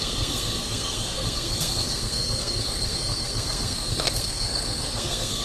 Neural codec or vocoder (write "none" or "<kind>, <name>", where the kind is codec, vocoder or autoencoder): codec, SNAC